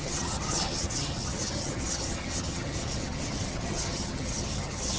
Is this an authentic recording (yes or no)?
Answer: no